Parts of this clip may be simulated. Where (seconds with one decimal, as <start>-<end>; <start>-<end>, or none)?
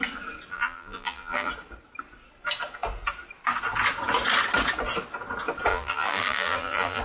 0.5-1.5; 5.7-7.0